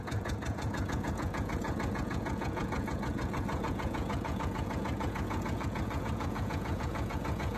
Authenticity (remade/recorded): remade